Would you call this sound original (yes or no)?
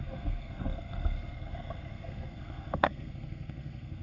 no